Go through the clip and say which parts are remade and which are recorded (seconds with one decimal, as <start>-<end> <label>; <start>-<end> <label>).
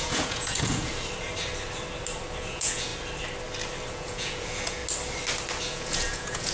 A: 0.0-0.9 remade; 0.9-2.4 recorded; 2.4-2.9 remade; 2.9-3.9 recorded; 3.9-4.8 remade; 4.8-5.6 recorded; 5.6-6.5 remade